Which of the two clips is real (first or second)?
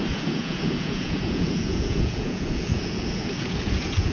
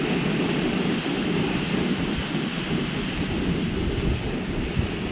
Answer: second